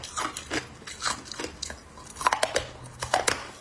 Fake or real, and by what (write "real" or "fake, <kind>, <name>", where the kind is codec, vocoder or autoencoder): real